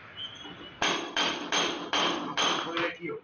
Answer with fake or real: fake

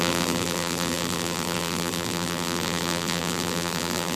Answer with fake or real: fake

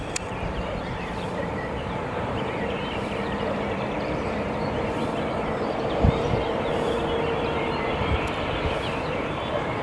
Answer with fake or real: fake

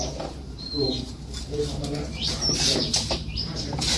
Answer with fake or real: fake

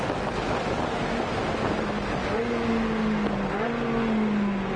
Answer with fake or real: real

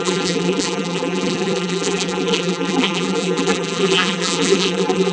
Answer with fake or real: fake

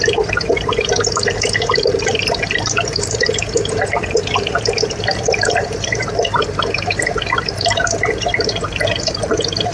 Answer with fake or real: fake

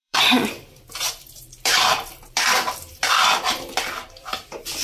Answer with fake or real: fake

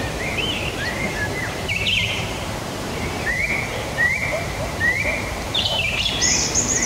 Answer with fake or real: fake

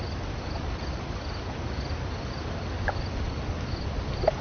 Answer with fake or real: real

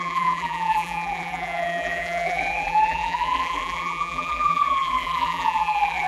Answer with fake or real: fake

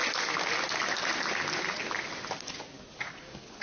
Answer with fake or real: real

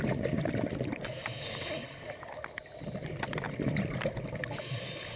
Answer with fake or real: real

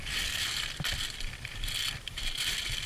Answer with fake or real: fake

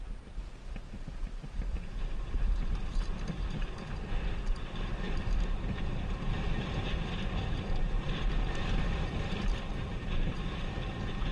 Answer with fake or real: fake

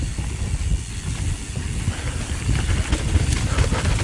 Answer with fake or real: real